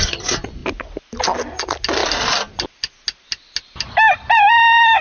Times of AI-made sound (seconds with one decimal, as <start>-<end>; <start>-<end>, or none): none